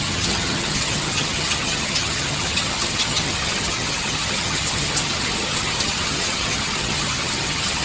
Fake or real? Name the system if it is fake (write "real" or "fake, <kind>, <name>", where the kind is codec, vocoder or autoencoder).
fake, vocoder, HiFi-GAN